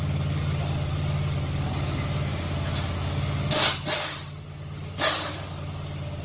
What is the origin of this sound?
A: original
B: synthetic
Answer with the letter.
A